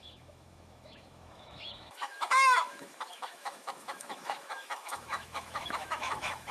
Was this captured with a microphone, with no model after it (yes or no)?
no